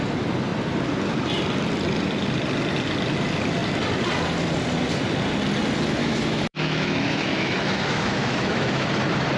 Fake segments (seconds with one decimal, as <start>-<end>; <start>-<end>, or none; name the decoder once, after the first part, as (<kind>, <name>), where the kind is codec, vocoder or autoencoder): 6.0-8.9 (autoencoder, DAC-VAE)